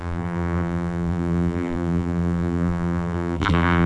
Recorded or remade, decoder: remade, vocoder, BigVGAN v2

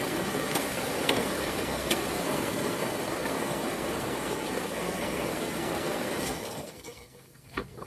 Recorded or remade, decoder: remade, codec, SNAC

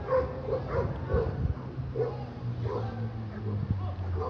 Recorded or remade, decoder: recorded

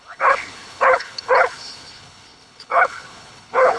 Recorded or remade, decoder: remade, codec, HILCodec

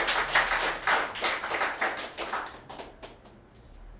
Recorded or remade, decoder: recorded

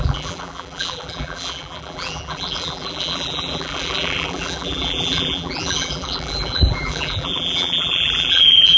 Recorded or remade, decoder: remade, vocoder, BigVGAN v2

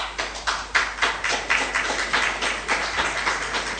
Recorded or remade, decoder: recorded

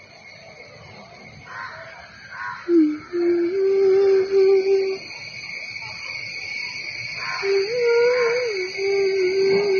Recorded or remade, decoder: recorded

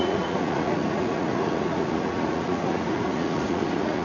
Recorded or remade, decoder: remade, vocoder, Vocos